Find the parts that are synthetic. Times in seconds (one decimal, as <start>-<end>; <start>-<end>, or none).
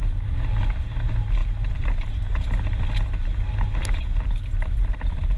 none